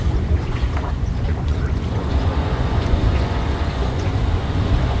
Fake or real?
fake